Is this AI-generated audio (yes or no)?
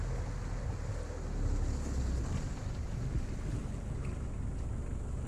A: no